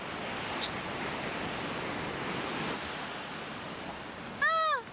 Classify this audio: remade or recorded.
recorded